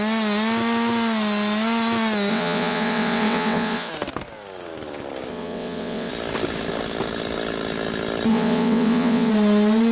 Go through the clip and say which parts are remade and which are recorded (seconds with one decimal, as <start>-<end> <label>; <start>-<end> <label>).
0.0-2.3 recorded; 2.3-3.9 remade; 3.9-5.3 recorded; 5.3-6.1 remade; 6.1-8.3 recorded; 8.3-9.3 remade; 9.3-9.9 recorded